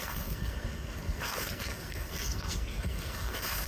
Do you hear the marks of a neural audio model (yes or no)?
yes